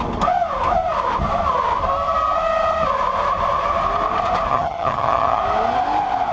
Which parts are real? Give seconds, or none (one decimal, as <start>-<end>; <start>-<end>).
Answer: 0.0-4.5; 5.4-6.3